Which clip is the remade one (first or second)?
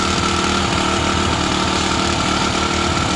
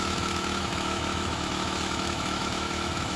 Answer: second